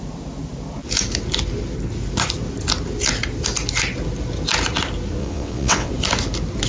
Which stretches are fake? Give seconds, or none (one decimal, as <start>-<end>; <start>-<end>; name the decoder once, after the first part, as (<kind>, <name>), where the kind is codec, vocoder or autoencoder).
5.2-5.9 (vocoder, WaveNeXt)